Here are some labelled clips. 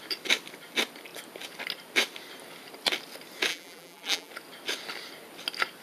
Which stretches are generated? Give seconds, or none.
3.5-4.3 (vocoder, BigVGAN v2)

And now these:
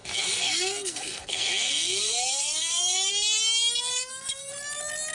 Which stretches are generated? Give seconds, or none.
0.0-3.1 (codec, SNAC); 3.9-4.5

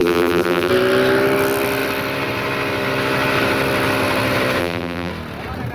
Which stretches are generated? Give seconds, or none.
0.0-0.7 (vocoder, BigVGAN v2); 4.6-5.1

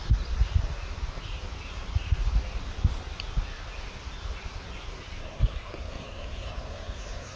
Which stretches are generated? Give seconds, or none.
5.2-7.4 (codec, SNAC)

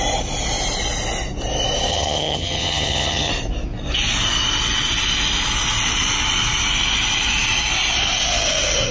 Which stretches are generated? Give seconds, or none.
1.9-3.3 (vocoder, HiFi-GAN)